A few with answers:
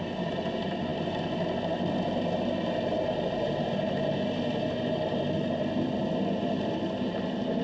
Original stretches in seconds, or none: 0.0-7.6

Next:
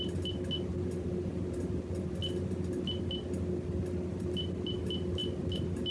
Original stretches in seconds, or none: 0.0-5.9